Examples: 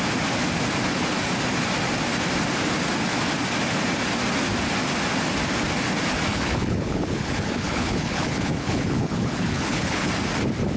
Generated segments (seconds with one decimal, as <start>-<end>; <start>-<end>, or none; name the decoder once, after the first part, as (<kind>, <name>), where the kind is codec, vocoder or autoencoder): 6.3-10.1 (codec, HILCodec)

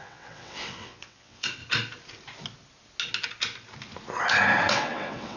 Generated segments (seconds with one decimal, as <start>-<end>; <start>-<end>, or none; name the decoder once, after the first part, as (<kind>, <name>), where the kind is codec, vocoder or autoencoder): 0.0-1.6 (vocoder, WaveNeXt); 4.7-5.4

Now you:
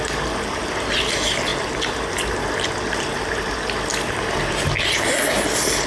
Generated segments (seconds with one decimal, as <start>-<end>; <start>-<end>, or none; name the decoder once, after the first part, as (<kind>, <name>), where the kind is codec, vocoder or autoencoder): none

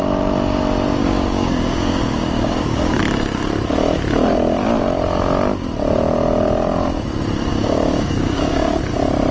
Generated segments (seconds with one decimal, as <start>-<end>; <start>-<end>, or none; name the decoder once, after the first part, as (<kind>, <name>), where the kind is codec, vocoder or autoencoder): 1.0-3.0 (codec, DAC); 7.5-8.8

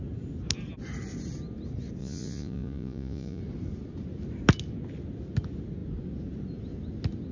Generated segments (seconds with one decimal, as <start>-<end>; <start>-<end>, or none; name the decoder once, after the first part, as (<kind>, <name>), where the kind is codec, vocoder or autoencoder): 2.0-3.4 (vocoder, Vocos)